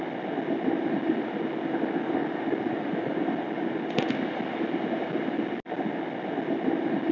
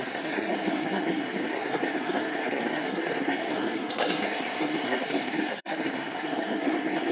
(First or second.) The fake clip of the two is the second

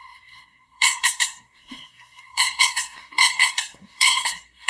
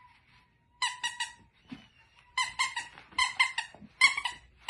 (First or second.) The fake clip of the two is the first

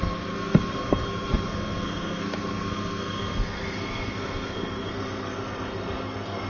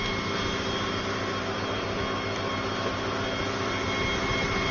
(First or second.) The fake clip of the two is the first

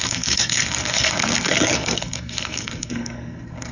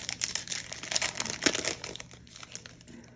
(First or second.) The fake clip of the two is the first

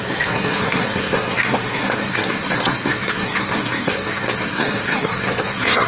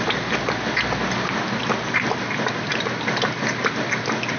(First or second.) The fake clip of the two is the first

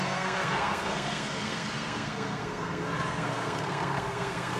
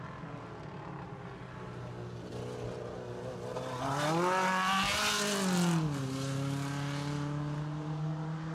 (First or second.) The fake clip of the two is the first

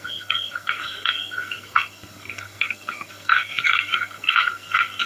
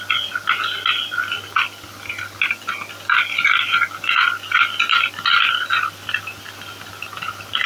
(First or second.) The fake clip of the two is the first